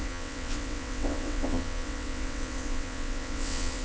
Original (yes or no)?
no